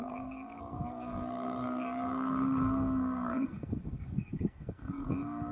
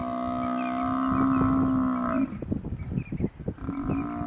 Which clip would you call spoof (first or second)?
first